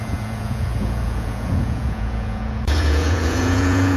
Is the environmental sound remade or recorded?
remade